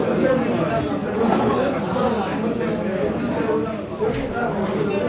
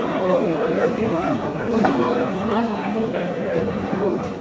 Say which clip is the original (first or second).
first